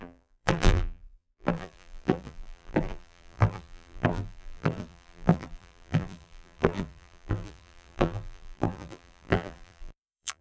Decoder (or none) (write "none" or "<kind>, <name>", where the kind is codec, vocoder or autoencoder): vocoder, BigVGAN v2